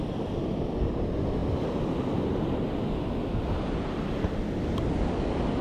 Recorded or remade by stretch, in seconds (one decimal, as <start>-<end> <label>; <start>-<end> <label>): 0.0-5.6 recorded